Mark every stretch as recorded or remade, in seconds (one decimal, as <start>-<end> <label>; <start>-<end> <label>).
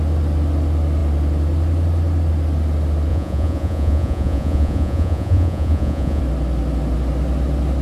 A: 0.0-3.1 recorded; 3.1-6.2 remade; 6.2-7.8 recorded